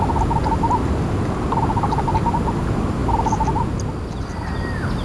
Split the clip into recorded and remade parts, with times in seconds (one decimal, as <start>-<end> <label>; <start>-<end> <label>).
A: 0.0-5.0 recorded